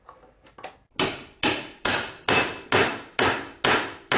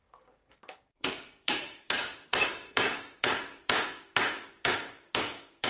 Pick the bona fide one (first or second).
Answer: first